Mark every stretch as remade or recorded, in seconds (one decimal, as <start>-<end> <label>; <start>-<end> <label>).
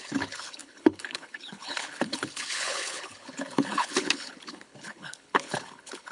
0.0-6.1 remade